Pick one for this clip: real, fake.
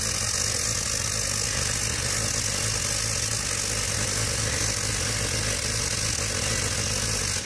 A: real